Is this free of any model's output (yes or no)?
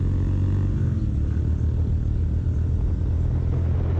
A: yes